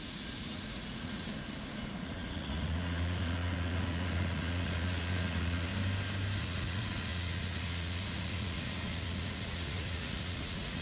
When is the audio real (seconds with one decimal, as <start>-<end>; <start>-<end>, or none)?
1.3-1.9; 5.7-6.4